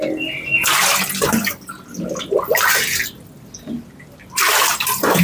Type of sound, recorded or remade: recorded